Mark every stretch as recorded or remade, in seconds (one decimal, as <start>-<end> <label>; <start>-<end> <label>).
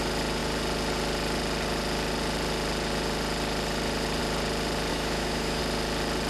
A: 0.0-4.9 recorded; 4.9-5.6 remade; 5.6-6.3 recorded